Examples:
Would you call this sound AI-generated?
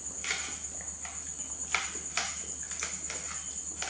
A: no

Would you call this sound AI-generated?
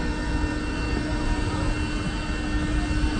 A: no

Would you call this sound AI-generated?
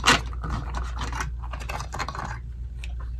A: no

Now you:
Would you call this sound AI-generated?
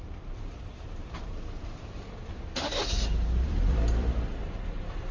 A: yes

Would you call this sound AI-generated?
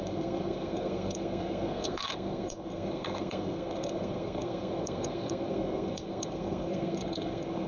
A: yes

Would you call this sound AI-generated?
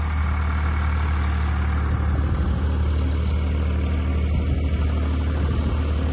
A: no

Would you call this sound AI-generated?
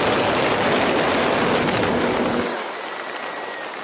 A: no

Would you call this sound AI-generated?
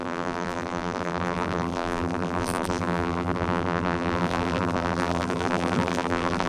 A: yes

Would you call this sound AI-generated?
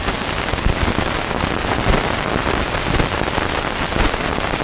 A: no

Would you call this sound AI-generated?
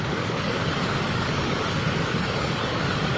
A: yes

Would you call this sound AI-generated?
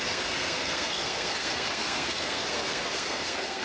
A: yes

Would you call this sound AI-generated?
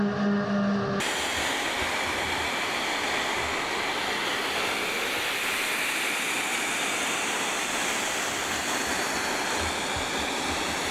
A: no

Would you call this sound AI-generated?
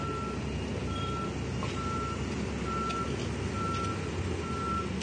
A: no